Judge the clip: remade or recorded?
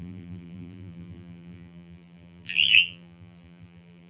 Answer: remade